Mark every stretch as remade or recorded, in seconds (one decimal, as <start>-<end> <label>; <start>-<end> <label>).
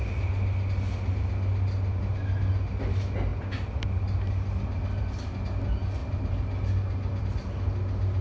0.0-8.2 recorded